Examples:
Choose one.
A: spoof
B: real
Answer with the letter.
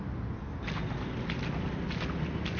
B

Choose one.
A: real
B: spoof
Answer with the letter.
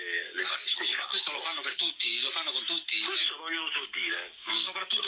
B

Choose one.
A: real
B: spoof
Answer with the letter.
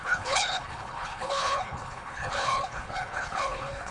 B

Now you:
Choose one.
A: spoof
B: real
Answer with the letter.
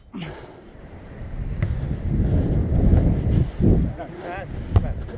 B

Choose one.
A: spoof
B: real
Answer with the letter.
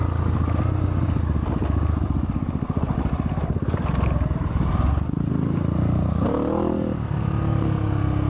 B